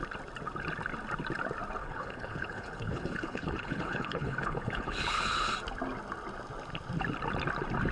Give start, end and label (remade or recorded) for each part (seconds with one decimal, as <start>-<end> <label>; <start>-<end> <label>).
0.0-1.8 recorded; 1.8-5.5 remade; 5.5-7.9 recorded